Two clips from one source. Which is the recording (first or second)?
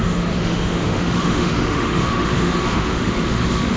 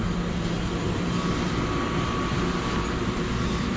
second